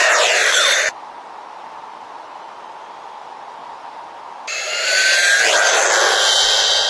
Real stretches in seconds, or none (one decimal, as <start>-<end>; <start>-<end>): 0.0-6.9